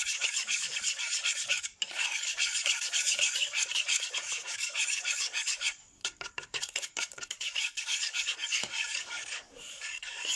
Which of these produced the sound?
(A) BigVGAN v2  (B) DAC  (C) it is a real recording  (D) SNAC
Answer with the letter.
B